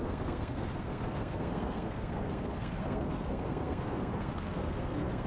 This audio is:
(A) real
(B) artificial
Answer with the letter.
B